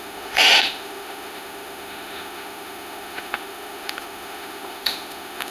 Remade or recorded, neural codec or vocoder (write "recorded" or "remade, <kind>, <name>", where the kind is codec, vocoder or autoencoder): remade, autoencoder, DAC-VAE